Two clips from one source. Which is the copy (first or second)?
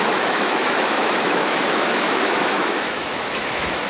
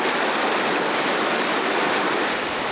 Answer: first